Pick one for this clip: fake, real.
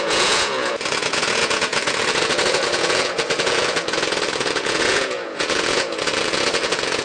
fake